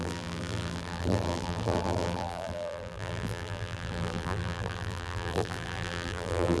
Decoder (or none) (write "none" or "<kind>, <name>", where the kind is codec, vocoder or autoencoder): vocoder, BigVGAN v2